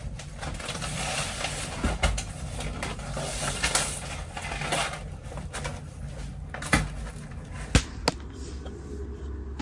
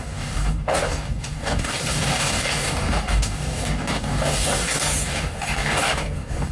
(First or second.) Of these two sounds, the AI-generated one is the second